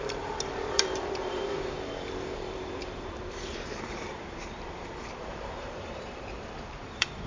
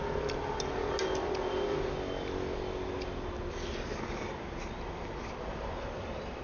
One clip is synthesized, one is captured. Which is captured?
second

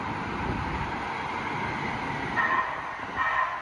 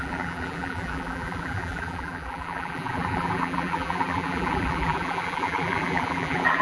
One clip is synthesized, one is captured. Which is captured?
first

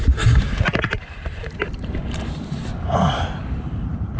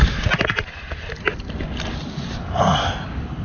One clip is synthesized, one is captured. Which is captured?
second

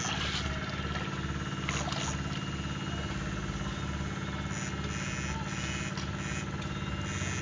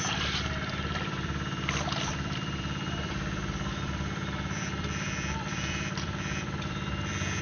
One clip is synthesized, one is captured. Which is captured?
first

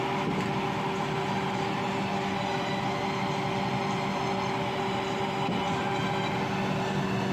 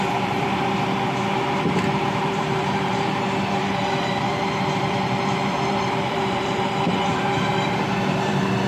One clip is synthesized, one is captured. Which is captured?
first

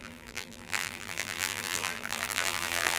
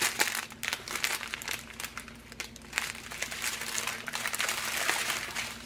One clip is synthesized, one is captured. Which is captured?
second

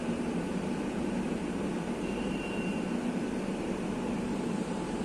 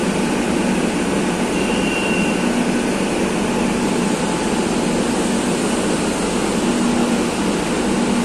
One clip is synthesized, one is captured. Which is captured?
second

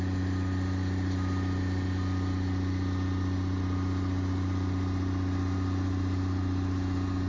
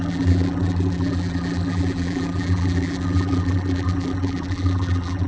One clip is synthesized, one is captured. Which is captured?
first